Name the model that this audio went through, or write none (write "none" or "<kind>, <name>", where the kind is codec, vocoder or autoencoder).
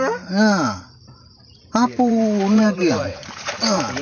vocoder, BigVGAN v2